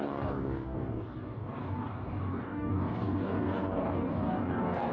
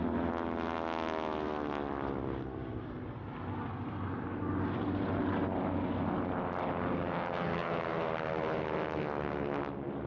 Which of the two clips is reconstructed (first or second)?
first